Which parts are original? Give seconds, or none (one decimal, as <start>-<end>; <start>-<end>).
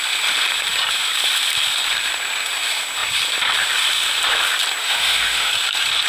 0.0-4.8; 5.5-6.1